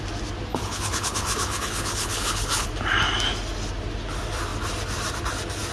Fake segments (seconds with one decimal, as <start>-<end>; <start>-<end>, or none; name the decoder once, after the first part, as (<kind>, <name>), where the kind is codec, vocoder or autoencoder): 0.5-2.7 (codec, HILCodec)